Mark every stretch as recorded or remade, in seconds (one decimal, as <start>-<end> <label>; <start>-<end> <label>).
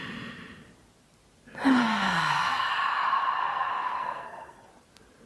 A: 0.0-1.8 recorded; 1.8-2.7 remade; 2.7-3.4 recorded; 3.4-4.7 remade; 4.7-5.3 recorded